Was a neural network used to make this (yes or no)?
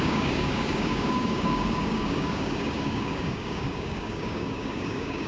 yes